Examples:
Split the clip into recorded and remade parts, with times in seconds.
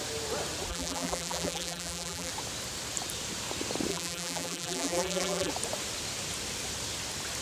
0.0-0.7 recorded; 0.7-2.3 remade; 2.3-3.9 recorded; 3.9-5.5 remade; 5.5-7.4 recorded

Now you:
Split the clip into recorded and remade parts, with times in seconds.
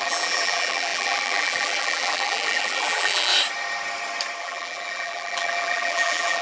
0.0-3.3 remade; 3.3-4.4 recorded; 4.4-6.4 remade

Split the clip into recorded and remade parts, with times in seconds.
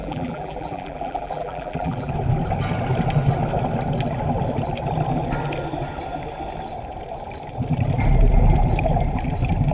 0.0-2.1 remade; 2.1-9.7 recorded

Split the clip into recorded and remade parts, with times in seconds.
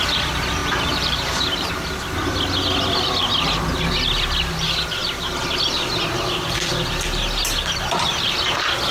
0.0-0.6 recorded; 0.6-1.7 remade; 1.7-8.9 recorded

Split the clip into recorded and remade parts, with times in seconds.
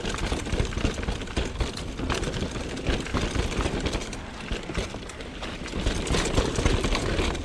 0.0-7.4 recorded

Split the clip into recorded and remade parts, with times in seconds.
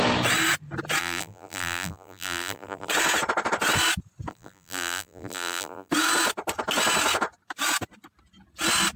0.0-1.0 recorded; 1.0-2.9 remade; 2.9-4.3 recorded; 4.3-5.9 remade; 5.9-9.0 recorded